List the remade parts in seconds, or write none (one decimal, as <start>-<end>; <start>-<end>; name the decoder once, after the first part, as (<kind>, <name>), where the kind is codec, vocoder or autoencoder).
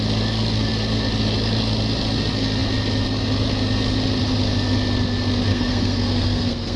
5.5-6.8 (codec, SNAC)